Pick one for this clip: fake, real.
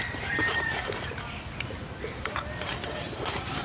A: real